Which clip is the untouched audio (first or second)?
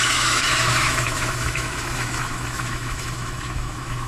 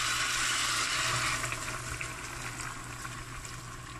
second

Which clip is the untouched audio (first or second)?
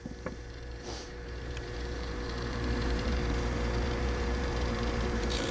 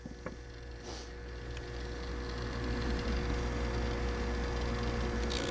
second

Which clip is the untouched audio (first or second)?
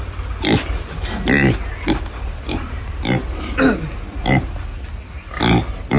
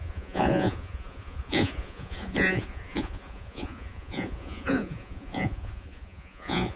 first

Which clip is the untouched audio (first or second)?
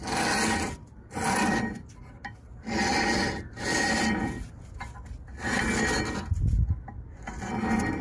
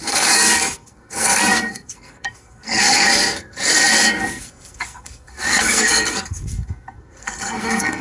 first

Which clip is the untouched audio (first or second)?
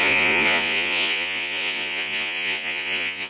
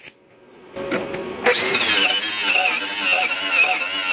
second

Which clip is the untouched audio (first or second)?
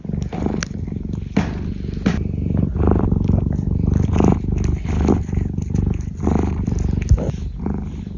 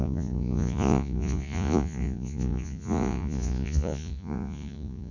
first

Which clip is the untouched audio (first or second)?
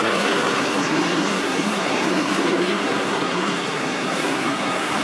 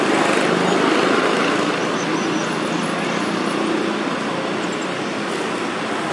second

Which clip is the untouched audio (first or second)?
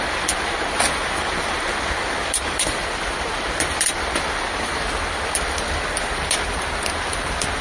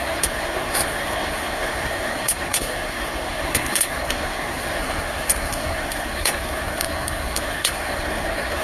first